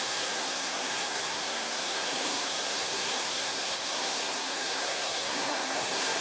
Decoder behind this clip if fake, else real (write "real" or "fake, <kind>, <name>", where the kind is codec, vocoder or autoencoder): fake, codec, SNAC